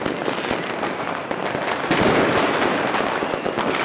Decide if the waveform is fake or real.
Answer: real